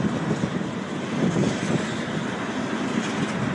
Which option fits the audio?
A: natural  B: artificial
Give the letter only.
A